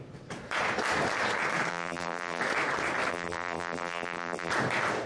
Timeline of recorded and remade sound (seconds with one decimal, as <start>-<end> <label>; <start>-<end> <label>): 0.0-1.7 recorded; 1.7-2.4 remade; 2.4-3.1 recorded; 3.1-4.5 remade; 4.5-5.1 recorded